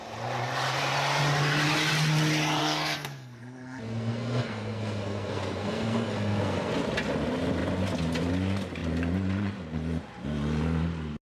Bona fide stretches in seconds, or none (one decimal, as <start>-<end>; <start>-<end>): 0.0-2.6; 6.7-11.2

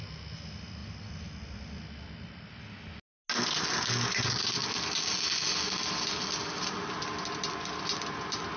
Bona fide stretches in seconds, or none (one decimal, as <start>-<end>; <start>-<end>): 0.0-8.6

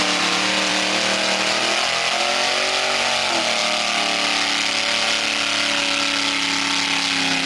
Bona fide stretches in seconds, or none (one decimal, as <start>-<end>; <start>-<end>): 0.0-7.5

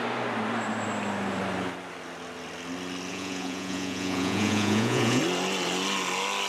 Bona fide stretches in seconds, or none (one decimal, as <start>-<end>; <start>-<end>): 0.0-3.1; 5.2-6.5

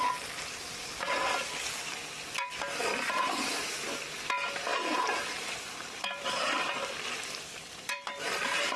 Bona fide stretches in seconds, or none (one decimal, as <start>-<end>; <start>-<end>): 0.0-2.0; 4.0-4.7

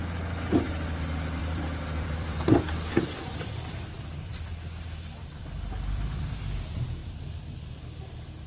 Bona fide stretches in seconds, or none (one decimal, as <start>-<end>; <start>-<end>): 0.0-1.4; 6.3-8.5